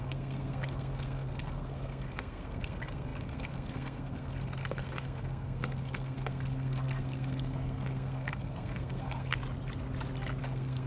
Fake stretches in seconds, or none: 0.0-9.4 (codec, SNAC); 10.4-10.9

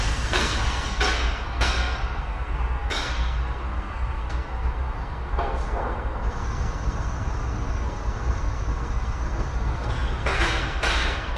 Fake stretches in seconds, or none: 0.0-11.4 (codec, SNAC)

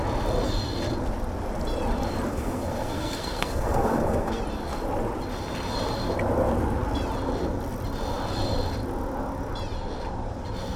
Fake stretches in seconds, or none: 2.3-4.4 (codec, SNAC)

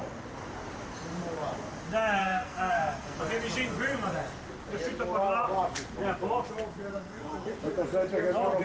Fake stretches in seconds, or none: 2.2-3.2 (codec, SNAC); 6.9-7.7

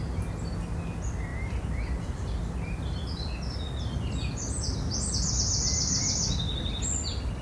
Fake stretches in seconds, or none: none

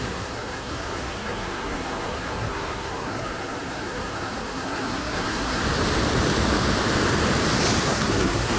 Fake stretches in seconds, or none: 0.0-5.6 (codec, SNAC); 7.8-8.6